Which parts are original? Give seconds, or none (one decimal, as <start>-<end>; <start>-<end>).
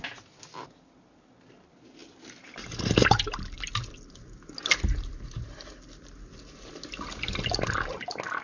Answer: 0.0-2.0; 2.8-8.4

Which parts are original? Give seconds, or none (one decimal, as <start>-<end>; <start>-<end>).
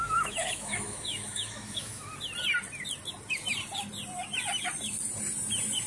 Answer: 2.1-5.9